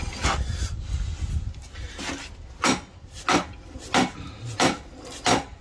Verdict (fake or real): real